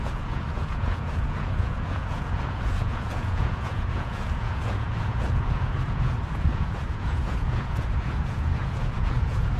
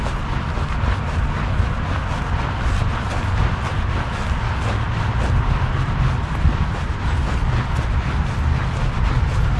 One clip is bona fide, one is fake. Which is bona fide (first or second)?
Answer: second